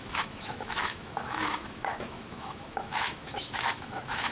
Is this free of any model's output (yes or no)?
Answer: no